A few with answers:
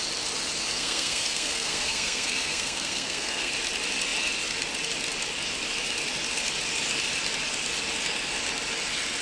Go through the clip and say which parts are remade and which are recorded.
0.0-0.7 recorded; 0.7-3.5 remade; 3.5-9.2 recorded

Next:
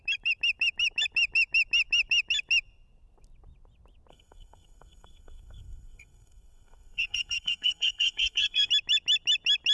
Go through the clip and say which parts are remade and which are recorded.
0.0-4.1 recorded; 4.1-8.7 remade; 8.7-9.7 recorded